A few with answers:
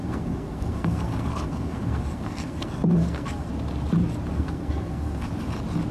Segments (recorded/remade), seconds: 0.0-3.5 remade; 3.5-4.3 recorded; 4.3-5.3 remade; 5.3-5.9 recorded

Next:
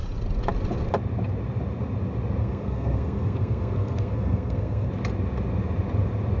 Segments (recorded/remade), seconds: 0.0-2.4 recorded; 2.4-4.9 remade; 4.9-6.4 recorded

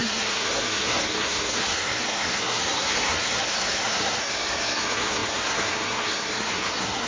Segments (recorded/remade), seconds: 0.0-7.1 remade

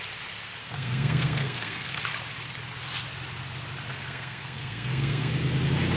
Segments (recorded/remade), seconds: 0.0-0.6 recorded; 0.6-2.0 remade; 2.0-3.9 recorded; 3.9-5.3 remade; 5.3-6.0 recorded

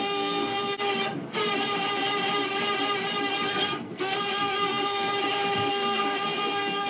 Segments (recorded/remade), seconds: 0.0-0.7 remade; 0.7-3.5 recorded; 3.5-5.1 remade; 5.1-5.7 recorded; 5.7-6.9 remade